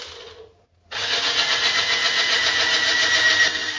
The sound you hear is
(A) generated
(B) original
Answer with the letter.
B